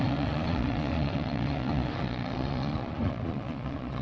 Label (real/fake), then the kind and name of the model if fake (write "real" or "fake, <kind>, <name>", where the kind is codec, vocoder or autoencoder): fake, vocoder, Vocos